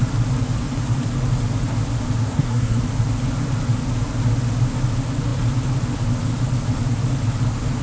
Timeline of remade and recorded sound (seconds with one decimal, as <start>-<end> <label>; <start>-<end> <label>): 0.0-2.2 recorded; 2.2-2.8 remade; 2.8-7.8 recorded